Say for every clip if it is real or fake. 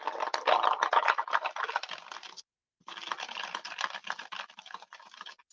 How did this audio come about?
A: real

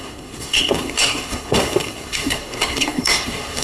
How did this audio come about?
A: fake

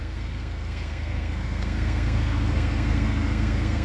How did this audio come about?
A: fake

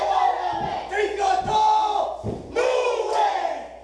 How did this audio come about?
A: real